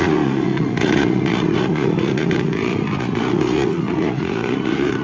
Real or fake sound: fake